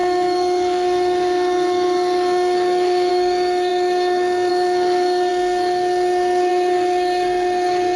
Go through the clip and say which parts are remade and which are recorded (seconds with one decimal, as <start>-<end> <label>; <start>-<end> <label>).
0.0-8.0 remade

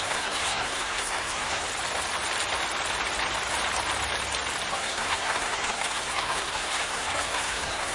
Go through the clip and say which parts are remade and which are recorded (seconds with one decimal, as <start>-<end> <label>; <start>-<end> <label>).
0.0-1.7 remade; 1.7-4.7 recorded; 4.7-7.9 remade

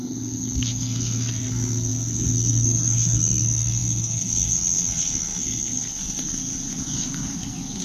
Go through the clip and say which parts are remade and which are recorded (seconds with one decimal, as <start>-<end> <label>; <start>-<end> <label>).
0.0-7.8 remade

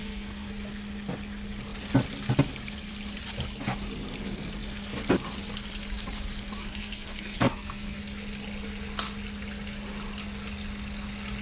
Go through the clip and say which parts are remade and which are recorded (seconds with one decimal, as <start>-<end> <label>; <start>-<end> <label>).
0.0-0.5 remade; 0.5-6.6 recorded; 6.6-8.0 remade; 8.0-11.4 recorded

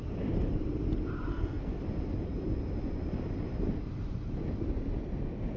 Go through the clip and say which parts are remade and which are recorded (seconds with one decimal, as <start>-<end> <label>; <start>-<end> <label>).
0.0-1.3 recorded; 1.3-1.8 remade; 1.8-5.6 recorded

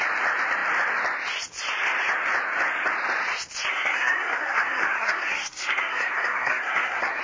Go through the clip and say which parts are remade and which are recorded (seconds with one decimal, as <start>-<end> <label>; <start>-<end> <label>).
0.0-3.7 recorded; 3.7-7.2 remade

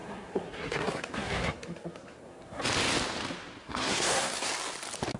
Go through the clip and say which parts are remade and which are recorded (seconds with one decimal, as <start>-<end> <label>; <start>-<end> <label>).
0.0-2.6 remade; 2.6-3.6 recorded; 3.6-4.5 remade; 4.5-5.2 recorded